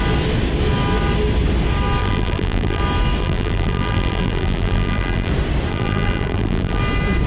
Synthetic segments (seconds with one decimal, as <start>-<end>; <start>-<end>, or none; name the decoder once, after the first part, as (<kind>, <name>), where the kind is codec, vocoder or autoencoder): 2.0-2.8 (vocoder, BigVGAN v2); 3.2-5.3; 5.7-6.8